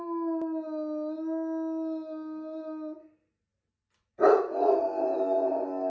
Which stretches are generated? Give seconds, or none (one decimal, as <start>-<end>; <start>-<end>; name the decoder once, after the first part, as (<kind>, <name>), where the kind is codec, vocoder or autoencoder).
none